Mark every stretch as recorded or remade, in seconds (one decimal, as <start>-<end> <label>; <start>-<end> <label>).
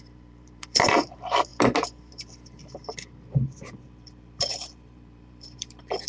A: 0.0-1.5 remade; 1.5-2.1 recorded; 2.1-6.1 remade